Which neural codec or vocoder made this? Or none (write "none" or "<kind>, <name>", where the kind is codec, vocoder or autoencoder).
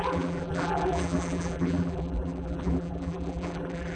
vocoder, BigVGAN v2